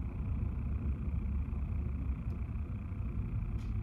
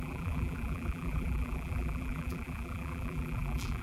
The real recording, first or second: first